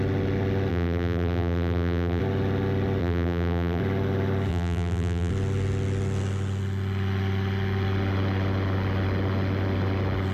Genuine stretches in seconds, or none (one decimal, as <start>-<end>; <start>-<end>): 0.0-0.7; 2.2-3.0; 3.8-4.5; 5.3-10.3